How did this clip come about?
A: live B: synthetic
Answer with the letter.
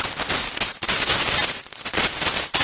A